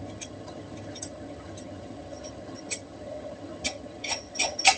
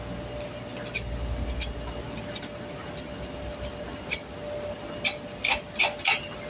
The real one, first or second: second